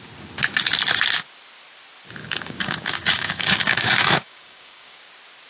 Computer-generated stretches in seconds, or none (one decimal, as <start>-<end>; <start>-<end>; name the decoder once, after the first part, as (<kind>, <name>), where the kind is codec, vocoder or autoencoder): 2.2-5.0 (codec, DAC)